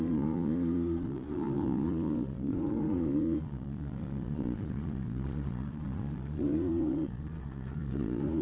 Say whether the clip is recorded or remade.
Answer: remade